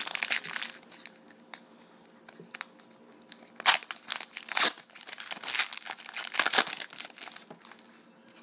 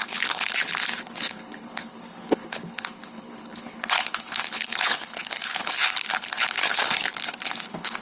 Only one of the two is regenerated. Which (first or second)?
second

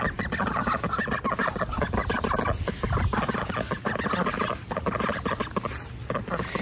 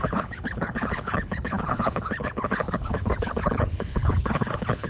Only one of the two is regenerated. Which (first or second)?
second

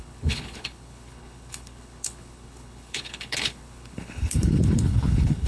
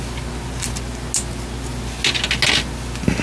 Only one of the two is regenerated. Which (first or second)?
first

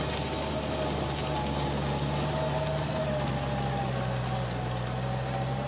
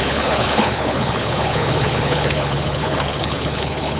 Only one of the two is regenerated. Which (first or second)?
second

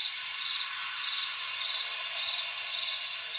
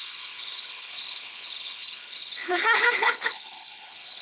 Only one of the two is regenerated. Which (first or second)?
second